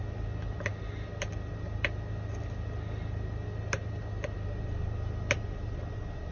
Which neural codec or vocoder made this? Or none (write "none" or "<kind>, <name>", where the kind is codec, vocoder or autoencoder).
none